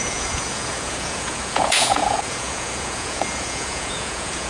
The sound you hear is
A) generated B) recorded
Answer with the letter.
A